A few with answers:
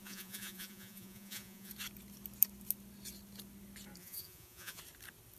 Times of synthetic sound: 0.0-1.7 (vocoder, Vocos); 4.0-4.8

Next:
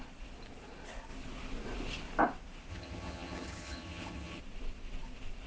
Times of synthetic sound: 2.7-4.4 (vocoder, HiFi-GAN)